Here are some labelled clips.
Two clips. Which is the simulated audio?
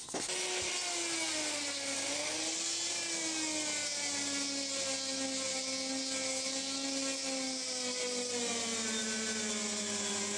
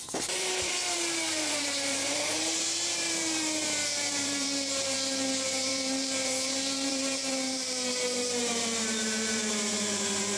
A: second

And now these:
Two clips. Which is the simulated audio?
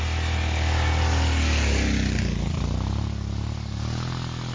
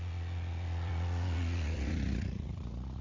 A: second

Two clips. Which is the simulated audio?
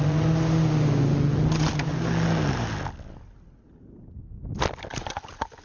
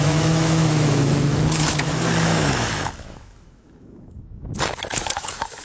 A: second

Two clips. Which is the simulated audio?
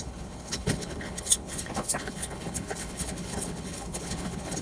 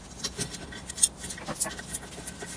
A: first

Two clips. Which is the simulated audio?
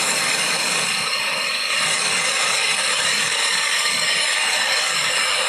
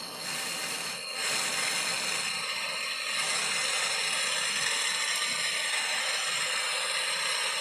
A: first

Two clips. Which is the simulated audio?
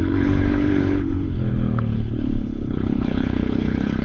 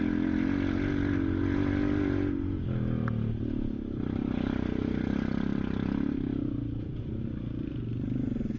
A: first